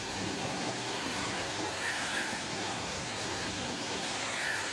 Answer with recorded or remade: remade